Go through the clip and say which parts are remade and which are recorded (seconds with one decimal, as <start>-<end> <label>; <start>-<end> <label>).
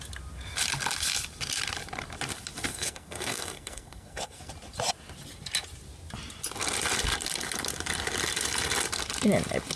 0.0-2.7 recorded; 2.7-4.5 remade; 4.5-9.8 recorded